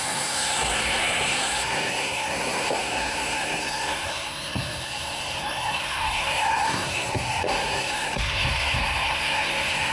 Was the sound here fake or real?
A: fake